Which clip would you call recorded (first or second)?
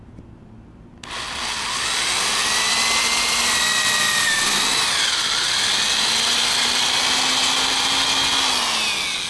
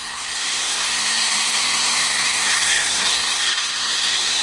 first